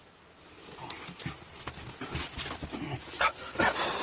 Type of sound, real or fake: real